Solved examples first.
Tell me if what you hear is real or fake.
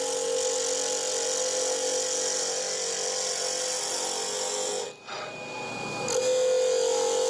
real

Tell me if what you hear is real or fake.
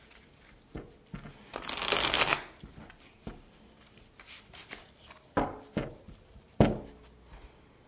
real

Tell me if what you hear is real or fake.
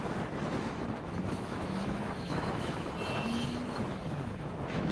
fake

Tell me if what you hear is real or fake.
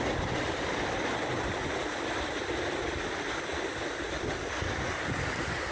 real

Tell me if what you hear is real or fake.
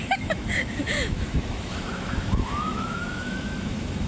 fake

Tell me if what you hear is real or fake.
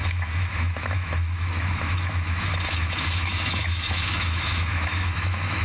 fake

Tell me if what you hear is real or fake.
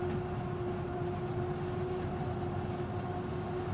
real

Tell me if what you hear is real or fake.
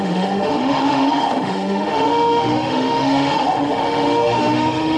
fake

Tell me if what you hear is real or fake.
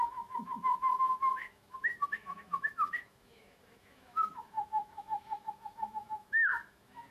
fake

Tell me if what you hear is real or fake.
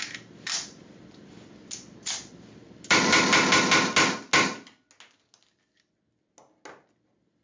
real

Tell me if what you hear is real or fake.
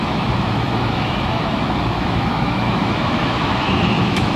fake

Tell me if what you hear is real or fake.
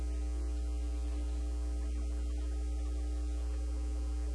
real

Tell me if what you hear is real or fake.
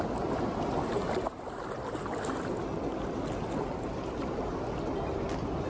real